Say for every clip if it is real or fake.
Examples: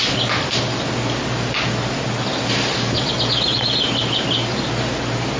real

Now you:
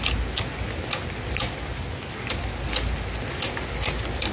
real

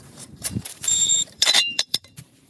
fake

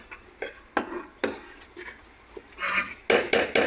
real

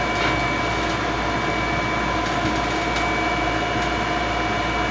real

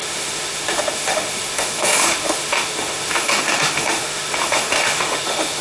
fake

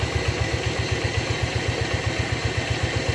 real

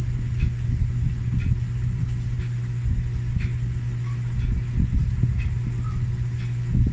real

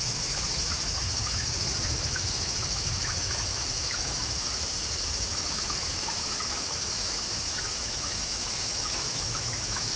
fake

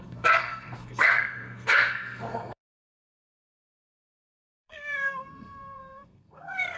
fake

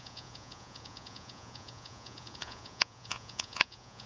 fake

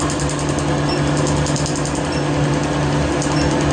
real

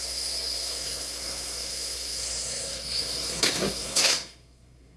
fake